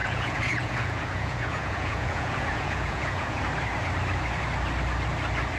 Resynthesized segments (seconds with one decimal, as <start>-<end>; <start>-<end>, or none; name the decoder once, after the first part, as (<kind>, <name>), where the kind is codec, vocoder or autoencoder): 0.0-3.4 (vocoder, Vocos)